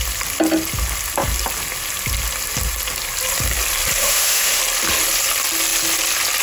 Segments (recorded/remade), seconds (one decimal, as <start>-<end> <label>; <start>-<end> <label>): 0.0-4.0 recorded; 4.0-4.6 remade; 4.6-6.4 recorded